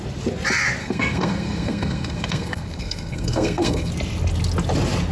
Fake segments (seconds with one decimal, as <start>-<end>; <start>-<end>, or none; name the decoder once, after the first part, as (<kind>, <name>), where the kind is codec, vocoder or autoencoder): 0.8-3.9 (codec, SNAC)